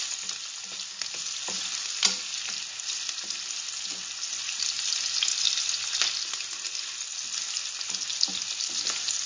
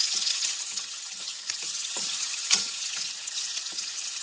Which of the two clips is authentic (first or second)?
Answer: first